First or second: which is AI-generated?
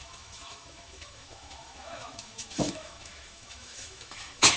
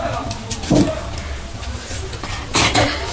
first